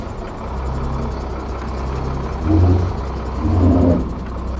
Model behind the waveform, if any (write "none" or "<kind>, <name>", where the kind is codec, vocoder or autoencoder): none